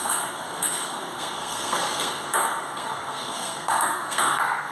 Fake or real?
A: fake